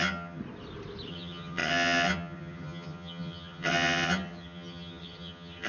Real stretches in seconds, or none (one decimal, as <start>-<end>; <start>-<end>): 0.4-1.1